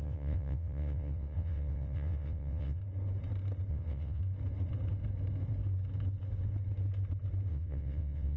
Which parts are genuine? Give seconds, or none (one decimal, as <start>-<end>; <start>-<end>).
2.8-3.7; 4.2-7.5